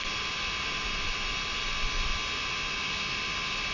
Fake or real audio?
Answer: fake